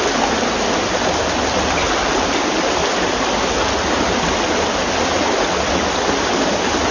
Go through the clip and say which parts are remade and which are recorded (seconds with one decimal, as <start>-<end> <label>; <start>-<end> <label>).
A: 0.0-6.9 recorded